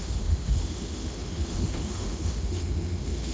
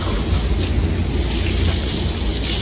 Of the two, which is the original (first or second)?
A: second